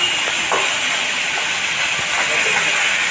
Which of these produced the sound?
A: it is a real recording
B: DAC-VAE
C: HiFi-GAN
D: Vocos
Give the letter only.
A